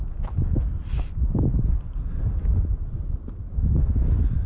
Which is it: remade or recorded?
recorded